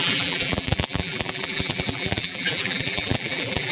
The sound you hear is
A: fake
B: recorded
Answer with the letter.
A